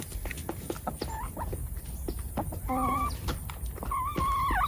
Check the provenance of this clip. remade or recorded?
recorded